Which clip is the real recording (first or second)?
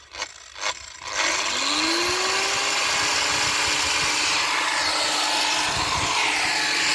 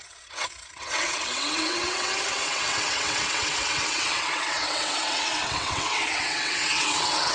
first